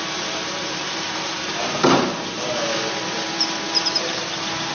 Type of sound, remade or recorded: remade